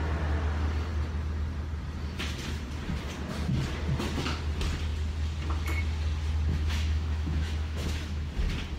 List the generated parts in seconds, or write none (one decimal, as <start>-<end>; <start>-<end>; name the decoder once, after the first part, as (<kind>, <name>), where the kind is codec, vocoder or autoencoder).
6.5-8.3 (autoencoder, DAC-VAE)